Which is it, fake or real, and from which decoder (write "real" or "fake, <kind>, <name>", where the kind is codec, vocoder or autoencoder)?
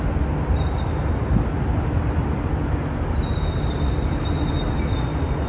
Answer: real